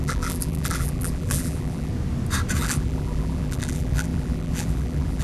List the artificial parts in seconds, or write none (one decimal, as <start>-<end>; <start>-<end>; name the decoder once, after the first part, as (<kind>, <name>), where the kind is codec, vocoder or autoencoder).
0.0-1.9 (vocoder, BigVGAN v2); 2.6-5.2